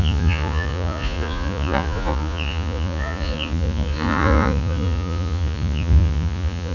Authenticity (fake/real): fake